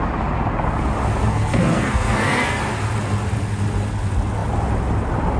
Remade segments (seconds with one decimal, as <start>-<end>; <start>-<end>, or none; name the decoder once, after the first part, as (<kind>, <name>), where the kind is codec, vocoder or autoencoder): 1.3-2.6 (codec, SNAC)